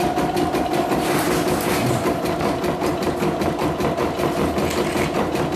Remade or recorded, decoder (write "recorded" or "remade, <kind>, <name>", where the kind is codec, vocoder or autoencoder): recorded